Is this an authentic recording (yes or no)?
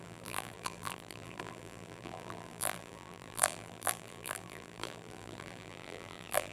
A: no